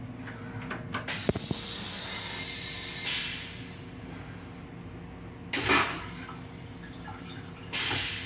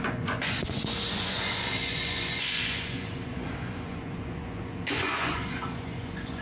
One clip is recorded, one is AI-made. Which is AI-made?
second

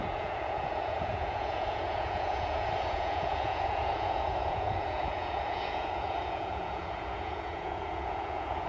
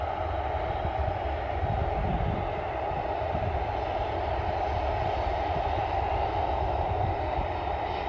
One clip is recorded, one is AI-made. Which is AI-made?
first